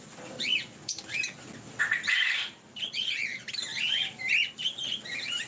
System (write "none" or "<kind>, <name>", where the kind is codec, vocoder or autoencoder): none